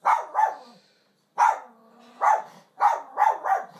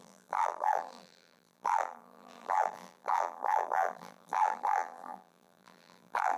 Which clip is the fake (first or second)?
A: second